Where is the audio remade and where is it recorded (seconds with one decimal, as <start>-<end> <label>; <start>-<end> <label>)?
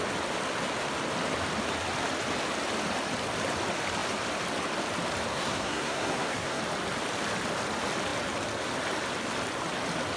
0.0-5.3 recorded; 5.3-6.6 remade; 6.6-10.2 recorded